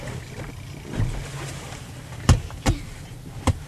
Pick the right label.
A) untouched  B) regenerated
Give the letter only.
A